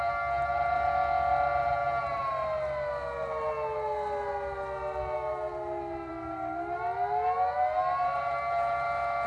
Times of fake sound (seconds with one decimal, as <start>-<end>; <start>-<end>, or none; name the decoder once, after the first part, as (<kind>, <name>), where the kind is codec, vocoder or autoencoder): none